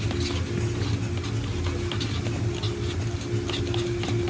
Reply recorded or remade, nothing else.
recorded